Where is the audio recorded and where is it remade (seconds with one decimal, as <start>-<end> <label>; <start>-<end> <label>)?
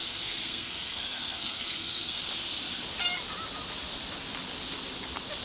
0.0-2.3 remade; 2.3-5.4 recorded